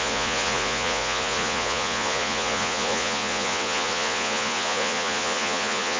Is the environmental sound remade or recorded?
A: remade